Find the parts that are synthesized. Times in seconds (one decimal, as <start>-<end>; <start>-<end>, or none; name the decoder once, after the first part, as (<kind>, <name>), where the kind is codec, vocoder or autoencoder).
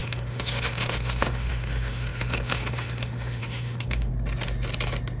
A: 0.0-4.1 (autoencoder, DAC-VAE)